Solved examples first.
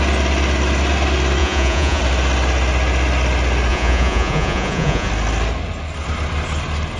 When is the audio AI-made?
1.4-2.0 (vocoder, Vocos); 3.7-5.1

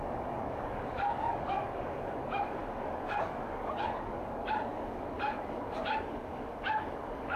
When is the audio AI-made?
0.0-7.4 (codec, DAC)